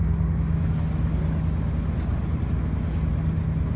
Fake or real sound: real